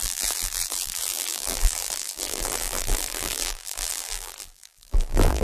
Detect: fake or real fake